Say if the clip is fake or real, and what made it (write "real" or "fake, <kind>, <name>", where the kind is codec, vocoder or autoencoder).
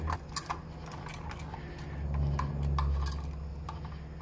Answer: real